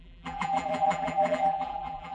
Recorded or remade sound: remade